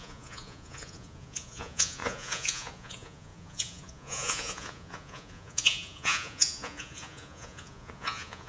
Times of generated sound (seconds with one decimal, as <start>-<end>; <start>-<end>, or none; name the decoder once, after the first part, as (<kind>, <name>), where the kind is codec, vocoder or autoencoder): 0.0-8.5 (vocoder, Vocos)